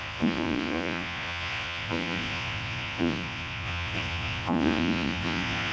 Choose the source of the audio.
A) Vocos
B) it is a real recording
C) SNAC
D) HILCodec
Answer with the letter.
A